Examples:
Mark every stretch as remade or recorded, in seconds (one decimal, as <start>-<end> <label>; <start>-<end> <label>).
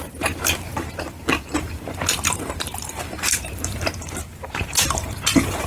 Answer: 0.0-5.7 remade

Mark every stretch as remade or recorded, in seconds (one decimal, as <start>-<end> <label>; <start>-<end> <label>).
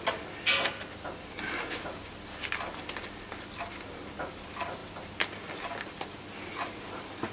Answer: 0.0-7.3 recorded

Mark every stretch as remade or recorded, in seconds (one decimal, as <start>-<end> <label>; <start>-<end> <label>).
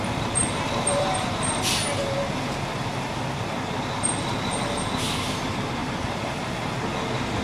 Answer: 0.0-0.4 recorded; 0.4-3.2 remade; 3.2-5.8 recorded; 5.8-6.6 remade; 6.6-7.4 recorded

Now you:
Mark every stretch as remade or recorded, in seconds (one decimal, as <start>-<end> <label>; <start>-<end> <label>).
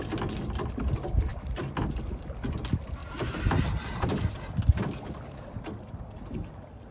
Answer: 0.0-6.9 recorded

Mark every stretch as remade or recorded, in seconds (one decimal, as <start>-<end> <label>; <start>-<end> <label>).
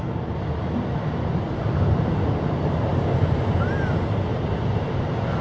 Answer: 0.0-4.3 recorded; 4.3-5.0 remade; 5.0-5.4 recorded